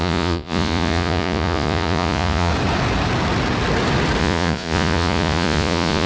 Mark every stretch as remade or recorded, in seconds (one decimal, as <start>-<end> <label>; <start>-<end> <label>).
0.0-2.5 remade; 2.5-4.2 recorded; 4.2-6.1 remade

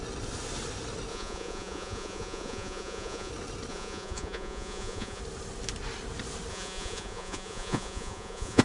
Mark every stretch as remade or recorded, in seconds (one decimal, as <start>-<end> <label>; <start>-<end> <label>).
0.0-1.1 recorded; 1.1-3.3 remade; 3.3-3.7 recorded; 3.7-5.2 remade; 5.2-6.5 recorded; 6.5-8.6 remade